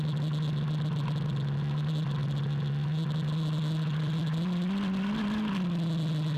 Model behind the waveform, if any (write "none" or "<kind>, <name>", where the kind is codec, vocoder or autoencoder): none